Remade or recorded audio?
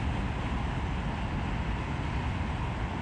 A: recorded